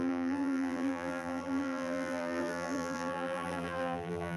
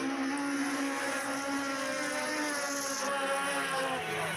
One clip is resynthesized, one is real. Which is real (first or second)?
second